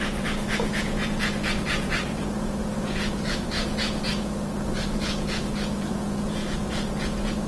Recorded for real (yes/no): no